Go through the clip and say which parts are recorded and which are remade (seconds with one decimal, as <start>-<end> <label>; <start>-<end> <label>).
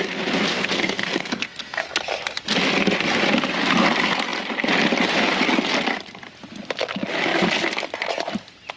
0.0-0.5 recorded; 0.5-1.9 remade; 1.9-8.8 recorded